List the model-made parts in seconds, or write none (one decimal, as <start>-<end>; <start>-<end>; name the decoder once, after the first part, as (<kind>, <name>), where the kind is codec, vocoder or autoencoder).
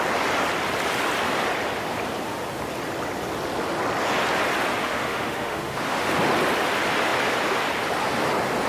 4.8-6.1 (autoencoder, DAC-VAE)